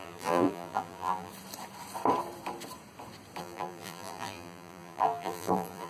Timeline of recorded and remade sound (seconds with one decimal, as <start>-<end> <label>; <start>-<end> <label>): 0.0-1.3 remade; 1.3-3.4 recorded; 3.4-5.9 remade